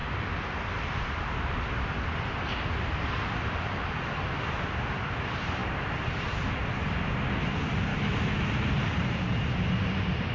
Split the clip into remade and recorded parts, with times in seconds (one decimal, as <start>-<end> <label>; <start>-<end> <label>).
0.0-7.9 recorded; 7.9-8.5 remade; 8.5-10.3 recorded